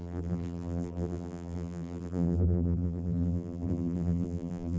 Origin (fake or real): fake